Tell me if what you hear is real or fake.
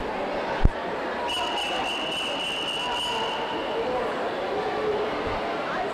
real